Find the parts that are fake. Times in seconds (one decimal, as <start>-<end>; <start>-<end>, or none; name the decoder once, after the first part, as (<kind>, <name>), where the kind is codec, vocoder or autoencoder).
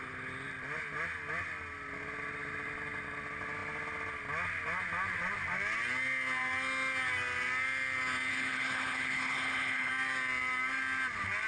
8.3-9.9 (codec, HILCodec)